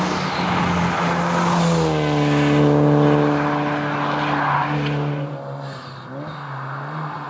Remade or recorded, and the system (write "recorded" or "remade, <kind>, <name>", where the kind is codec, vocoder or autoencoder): recorded